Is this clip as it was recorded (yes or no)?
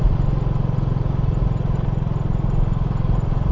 yes